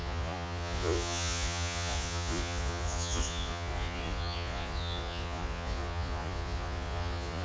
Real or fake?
fake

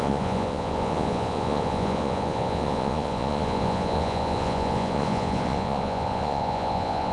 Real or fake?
fake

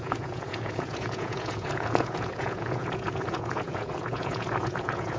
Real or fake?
fake